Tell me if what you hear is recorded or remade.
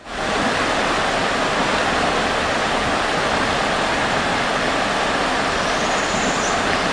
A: recorded